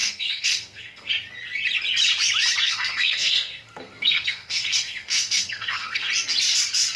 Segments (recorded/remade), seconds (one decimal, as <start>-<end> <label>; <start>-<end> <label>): 0.0-1.1 remade; 1.1-2.6 recorded; 2.6-6.1 remade; 6.1-7.0 recorded